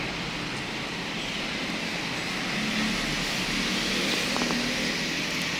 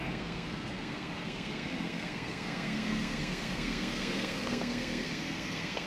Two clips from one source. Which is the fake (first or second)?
second